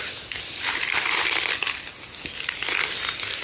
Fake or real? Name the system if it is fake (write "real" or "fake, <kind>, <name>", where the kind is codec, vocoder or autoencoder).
real